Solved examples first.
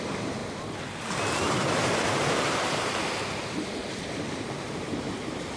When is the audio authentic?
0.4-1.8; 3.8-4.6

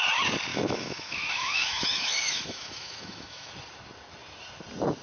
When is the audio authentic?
0.0-0.5; 3.5-5.0

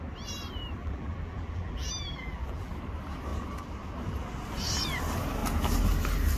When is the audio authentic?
0.0-0.8; 2.7-6.4

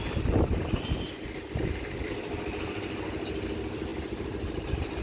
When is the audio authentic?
0.0-5.0

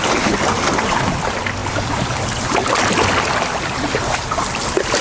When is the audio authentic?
0.0-5.0

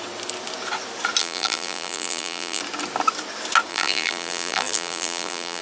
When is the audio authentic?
0.0-1.2; 2.6-3.7

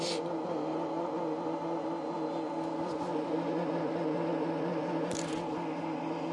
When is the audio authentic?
0.0-3.1; 3.8-6.3